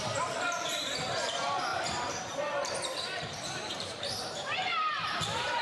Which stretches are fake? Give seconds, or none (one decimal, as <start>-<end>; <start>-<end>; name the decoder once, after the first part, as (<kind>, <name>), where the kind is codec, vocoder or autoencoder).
0.0-5.6 (vocoder, BigVGAN v2)